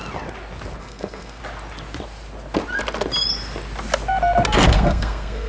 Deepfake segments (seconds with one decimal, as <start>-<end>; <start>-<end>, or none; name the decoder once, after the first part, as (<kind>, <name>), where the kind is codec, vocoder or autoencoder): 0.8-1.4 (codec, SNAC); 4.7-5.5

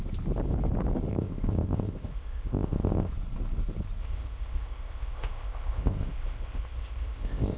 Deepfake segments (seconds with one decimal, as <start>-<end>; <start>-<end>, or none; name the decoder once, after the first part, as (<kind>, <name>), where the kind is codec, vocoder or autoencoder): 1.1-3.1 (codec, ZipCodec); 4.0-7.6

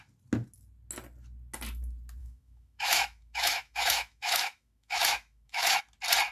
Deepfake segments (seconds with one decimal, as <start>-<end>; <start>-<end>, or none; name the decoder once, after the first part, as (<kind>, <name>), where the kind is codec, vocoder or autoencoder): 2.2-5.8 (autoencoder, DAC-VAE)

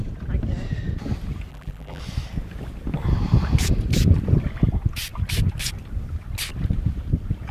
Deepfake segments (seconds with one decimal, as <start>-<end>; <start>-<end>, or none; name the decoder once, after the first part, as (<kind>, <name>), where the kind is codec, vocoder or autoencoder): 1.5-2.0 (vocoder, BigVGAN v2)

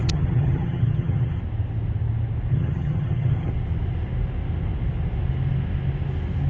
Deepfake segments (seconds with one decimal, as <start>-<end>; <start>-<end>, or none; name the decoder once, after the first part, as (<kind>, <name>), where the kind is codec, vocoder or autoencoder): 0.0-1.4 (vocoder, HiFi-GAN); 2.5-3.5